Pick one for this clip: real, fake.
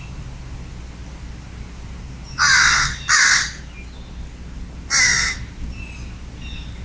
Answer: real